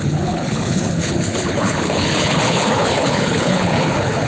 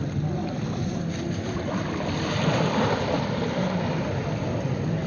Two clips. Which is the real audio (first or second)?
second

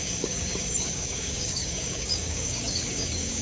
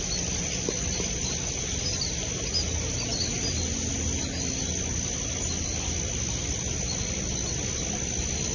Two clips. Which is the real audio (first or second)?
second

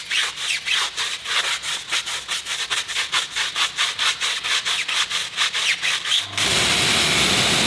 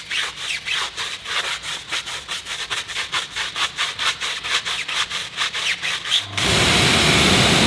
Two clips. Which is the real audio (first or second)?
first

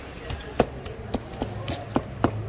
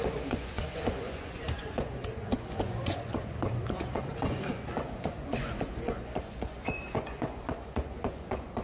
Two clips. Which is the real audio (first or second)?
first